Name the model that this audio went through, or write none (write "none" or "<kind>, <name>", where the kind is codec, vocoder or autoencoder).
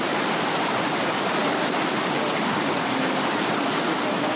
vocoder, BigVGAN v2